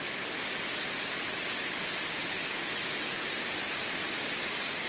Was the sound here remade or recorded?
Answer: recorded